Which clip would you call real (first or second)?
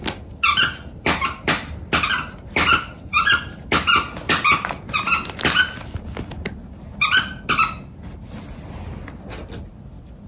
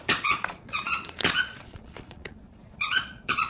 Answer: first